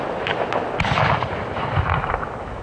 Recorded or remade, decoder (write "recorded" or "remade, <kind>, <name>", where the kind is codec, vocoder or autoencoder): recorded